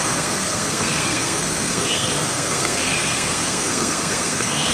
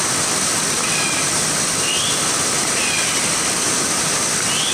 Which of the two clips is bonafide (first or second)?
second